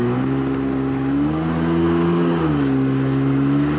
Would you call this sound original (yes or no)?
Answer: yes